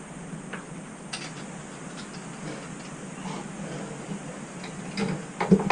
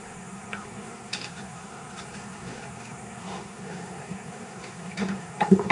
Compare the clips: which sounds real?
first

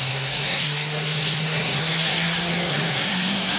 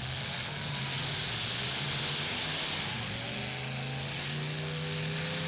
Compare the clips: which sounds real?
second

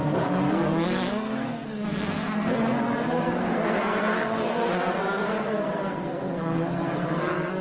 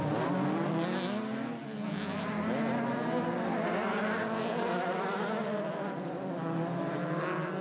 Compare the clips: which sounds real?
second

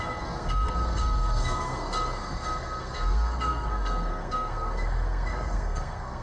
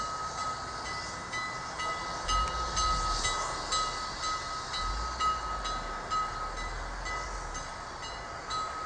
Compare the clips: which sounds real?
second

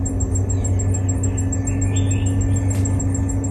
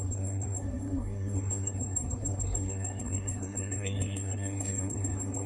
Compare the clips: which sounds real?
first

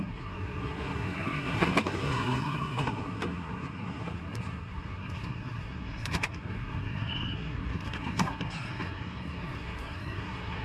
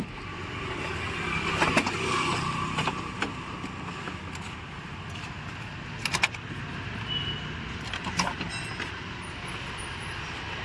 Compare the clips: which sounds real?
second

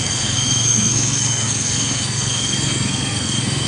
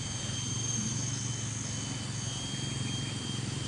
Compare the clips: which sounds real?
second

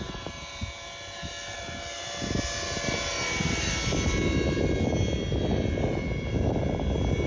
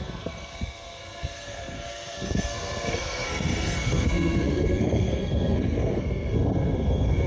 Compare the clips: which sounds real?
first